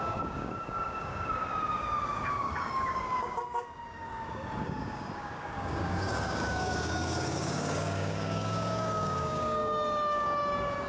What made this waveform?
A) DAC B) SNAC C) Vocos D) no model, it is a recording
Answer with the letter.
A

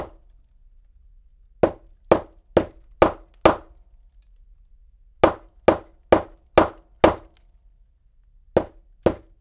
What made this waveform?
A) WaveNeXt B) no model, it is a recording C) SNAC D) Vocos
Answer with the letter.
B